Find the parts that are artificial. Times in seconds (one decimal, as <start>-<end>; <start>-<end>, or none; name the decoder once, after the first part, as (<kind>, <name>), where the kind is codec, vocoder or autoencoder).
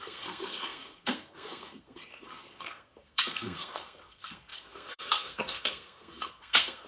0.0-6.9 (codec, SNAC)